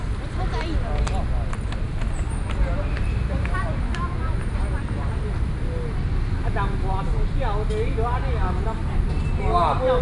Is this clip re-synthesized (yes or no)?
no